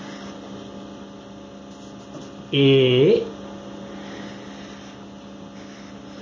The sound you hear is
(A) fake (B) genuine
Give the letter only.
B